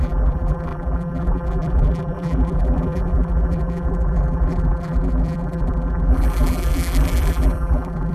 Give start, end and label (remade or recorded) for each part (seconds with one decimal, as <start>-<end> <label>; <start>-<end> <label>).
0.0-8.1 remade